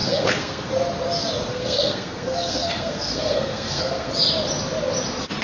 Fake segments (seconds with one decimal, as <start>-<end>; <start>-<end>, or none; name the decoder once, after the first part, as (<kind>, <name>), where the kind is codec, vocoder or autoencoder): 0.0-0.7 (codec, SNAC); 1.5-4.1